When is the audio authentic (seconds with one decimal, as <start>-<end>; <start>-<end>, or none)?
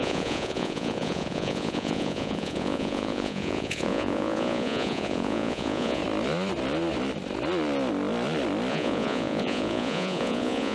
6.0-8.7